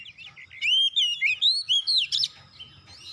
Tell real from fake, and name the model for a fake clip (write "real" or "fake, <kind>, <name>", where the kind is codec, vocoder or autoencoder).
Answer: real